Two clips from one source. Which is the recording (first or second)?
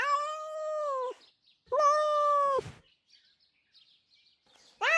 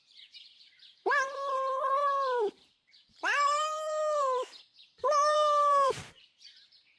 first